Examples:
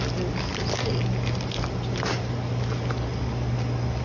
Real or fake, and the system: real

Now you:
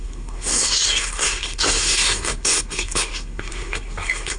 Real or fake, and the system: fake, codec, SNAC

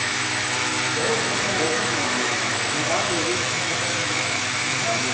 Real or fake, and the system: fake, autoencoder, DAC-VAE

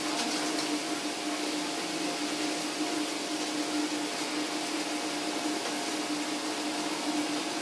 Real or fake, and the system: real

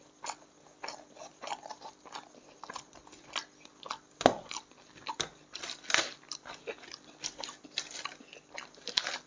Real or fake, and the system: real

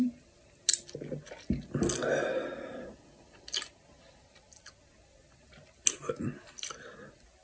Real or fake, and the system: real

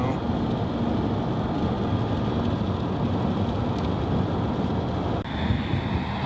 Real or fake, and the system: real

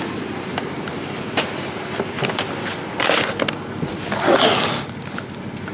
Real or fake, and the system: real